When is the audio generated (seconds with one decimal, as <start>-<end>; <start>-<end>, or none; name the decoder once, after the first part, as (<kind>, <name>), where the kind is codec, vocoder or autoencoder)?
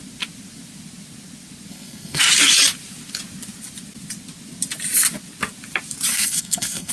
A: 1.7-2.2 (codec, SNAC); 6.1-6.9